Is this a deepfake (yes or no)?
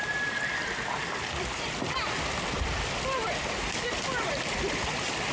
no